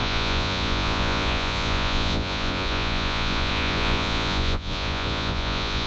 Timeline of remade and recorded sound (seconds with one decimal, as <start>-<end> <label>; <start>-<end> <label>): 0.0-5.9 remade